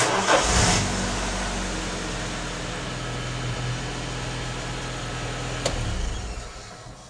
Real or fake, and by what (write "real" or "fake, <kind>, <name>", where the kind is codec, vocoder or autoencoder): real